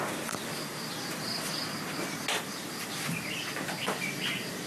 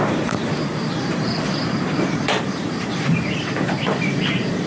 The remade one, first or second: second